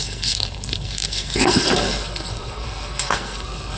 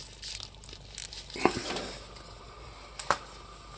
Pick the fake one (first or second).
first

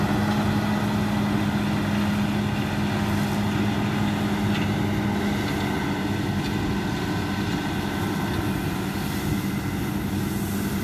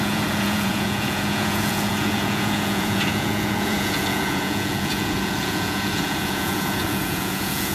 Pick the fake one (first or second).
second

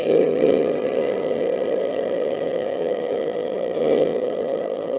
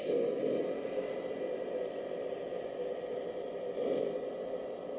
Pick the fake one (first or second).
first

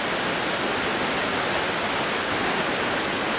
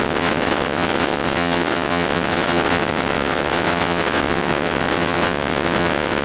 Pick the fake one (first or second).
second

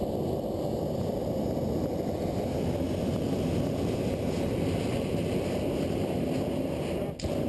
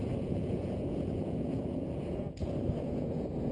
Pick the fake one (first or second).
second